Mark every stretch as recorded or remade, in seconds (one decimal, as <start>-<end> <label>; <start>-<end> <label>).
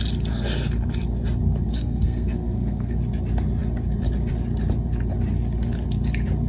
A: 0.0-1.7 recorded; 1.7-3.0 remade; 3.0-6.5 recorded